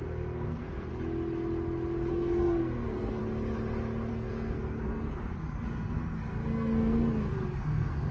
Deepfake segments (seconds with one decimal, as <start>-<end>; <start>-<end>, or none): 0.0-0.9; 2.1-3.2; 4.1-8.1